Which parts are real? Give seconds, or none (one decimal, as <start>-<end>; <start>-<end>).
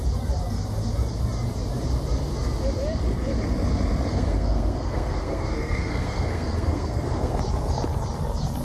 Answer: 0.0-4.1; 7.4-8.6